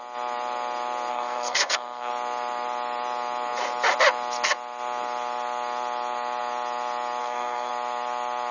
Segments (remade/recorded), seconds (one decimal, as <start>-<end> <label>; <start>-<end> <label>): 0.0-1.1 recorded; 1.1-2.1 remade; 2.1-7.2 recorded; 7.2-7.7 remade; 7.7-8.5 recorded